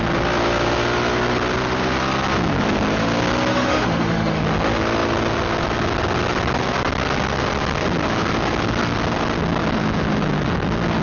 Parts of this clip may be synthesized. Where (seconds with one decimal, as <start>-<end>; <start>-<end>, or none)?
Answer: 3.5-4.4